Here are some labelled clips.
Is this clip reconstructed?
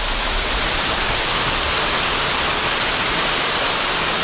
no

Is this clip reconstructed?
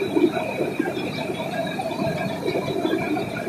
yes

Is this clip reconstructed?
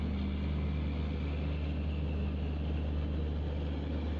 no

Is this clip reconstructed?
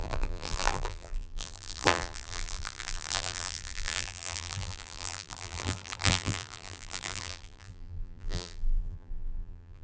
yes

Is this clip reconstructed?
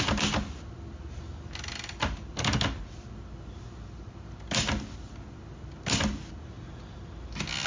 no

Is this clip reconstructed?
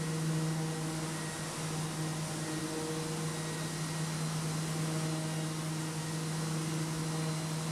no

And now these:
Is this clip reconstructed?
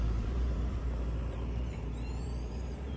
yes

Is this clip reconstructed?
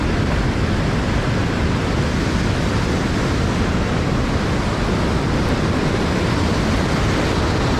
no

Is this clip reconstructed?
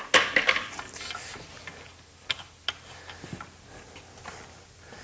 no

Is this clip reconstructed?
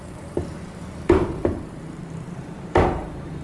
yes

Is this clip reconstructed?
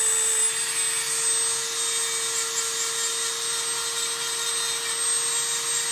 no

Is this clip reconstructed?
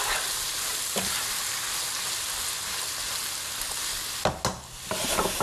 no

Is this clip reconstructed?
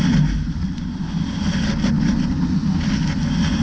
no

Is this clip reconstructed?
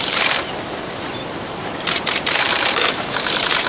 yes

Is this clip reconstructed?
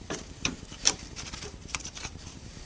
yes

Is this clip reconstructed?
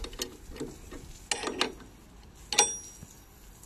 no